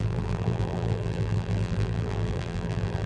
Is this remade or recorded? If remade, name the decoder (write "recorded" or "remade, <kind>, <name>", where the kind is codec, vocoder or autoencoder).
remade, vocoder, BigVGAN v2